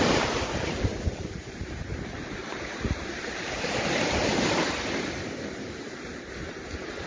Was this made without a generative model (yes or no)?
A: no